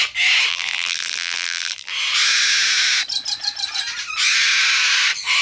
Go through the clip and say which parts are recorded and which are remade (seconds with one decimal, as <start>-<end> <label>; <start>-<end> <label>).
0.0-0.5 recorded; 0.5-1.9 remade; 1.9-5.4 recorded